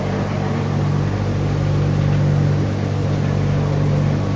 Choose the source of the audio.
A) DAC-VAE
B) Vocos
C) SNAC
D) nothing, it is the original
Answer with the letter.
D